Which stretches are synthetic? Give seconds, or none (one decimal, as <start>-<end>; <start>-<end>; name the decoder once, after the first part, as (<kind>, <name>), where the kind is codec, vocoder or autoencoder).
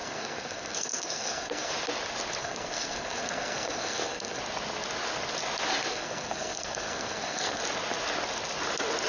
0.0-1.7 (codec, SNAC); 2.4-4.4; 5.9-7.6